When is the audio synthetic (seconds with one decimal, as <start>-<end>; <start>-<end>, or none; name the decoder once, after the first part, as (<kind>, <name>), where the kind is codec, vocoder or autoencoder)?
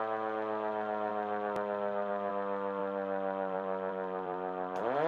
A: 1.1-2.3 (vocoder, BigVGAN v2); 2.8-5.1